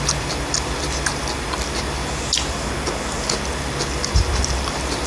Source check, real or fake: real